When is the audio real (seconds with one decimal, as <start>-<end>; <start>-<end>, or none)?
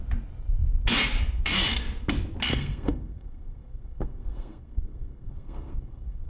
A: 0.0-2.5